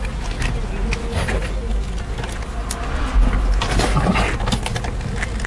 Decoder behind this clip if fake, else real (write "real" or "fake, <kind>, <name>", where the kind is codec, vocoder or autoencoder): real